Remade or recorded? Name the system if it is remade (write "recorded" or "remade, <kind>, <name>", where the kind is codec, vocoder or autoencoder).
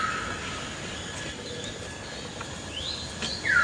recorded